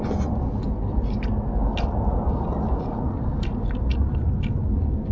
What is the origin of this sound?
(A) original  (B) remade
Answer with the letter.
A